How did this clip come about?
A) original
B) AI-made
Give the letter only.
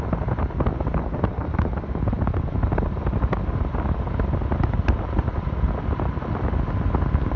A